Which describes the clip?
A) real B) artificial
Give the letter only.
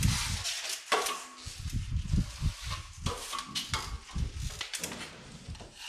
A